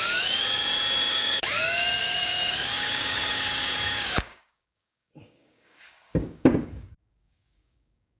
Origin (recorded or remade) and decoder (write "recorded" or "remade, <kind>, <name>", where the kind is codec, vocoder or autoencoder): remade, codec, DAC